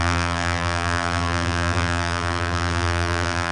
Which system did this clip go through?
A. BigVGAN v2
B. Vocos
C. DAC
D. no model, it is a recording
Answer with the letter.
A